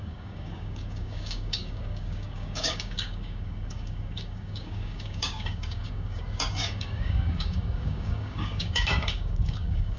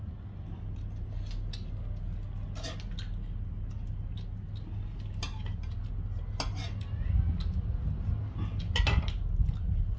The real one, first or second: second